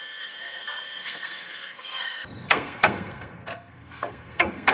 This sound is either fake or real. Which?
fake